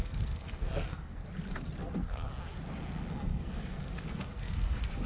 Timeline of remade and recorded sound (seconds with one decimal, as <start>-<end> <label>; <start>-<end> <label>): 0.0-1.2 remade; 1.2-1.8 recorded; 1.8-2.3 remade; 2.3-3.1 recorded; 3.1-5.1 remade